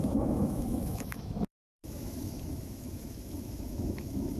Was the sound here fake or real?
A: fake